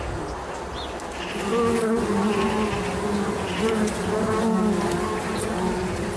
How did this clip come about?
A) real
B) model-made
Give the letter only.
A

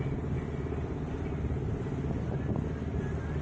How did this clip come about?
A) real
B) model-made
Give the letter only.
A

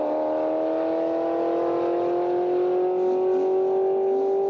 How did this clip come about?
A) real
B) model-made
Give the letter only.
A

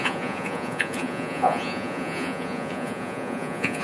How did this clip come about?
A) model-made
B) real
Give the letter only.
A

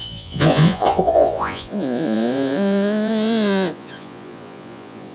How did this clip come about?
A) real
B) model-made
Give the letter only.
B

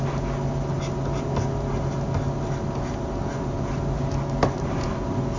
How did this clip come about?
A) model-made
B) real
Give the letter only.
B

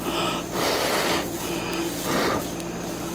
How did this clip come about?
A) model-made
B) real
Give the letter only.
B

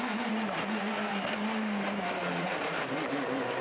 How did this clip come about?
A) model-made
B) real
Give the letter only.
A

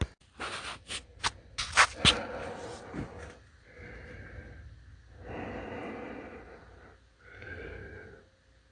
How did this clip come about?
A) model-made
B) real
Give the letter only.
B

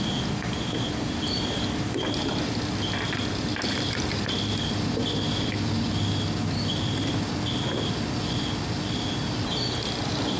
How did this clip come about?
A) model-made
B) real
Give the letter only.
B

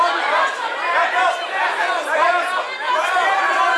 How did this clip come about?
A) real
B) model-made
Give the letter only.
A